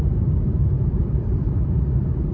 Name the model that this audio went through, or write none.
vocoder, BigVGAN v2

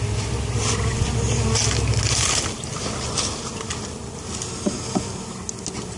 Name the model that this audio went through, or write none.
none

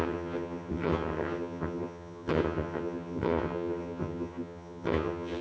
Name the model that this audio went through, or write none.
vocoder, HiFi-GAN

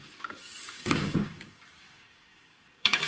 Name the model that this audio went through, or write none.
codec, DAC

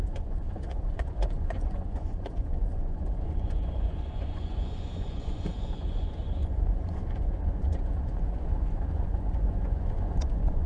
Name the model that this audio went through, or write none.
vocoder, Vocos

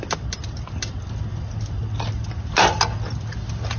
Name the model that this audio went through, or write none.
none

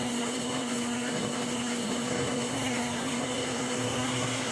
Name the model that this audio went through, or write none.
codec, SNAC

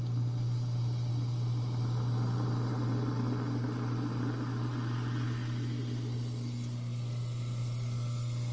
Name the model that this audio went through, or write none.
none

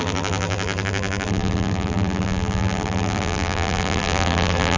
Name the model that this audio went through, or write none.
vocoder, BigVGAN v2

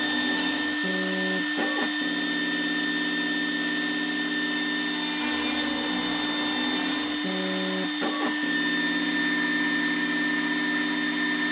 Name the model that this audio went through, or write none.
none